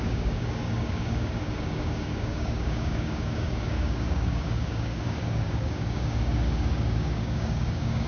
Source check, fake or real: fake